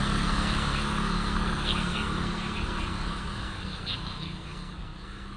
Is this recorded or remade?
remade